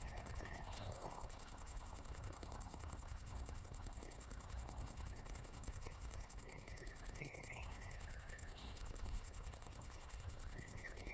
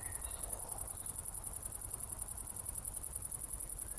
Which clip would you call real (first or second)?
second